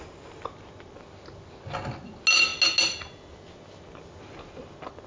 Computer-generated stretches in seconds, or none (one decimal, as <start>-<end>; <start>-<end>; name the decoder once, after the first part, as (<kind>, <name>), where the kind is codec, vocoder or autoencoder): none